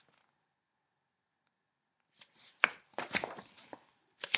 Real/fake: real